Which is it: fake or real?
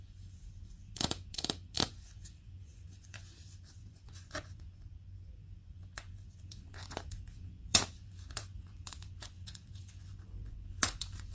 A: fake